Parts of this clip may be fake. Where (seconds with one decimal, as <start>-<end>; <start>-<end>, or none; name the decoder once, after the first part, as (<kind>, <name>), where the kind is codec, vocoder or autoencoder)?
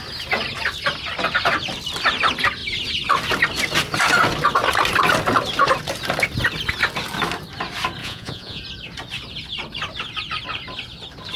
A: 8.0-8.6 (vocoder, Vocos)